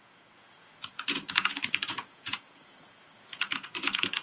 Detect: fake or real fake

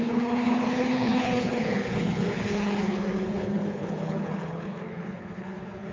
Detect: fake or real fake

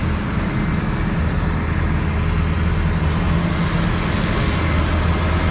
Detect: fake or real real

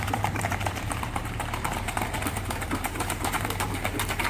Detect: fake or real fake